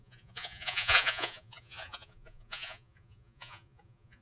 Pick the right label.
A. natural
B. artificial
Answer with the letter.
B